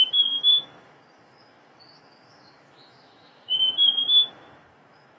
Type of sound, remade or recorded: remade